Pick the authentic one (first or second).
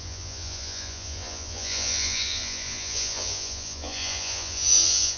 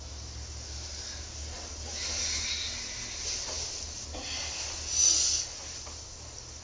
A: second